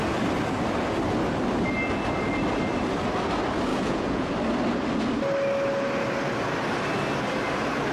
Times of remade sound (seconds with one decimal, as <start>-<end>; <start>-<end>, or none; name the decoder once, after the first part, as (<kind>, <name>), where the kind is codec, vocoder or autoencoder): 3.7-4.3 (vocoder, Vocos)